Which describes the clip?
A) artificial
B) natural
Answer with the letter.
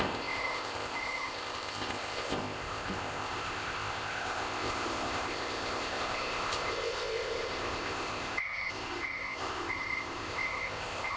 A